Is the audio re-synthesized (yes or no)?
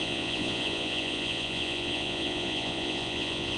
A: yes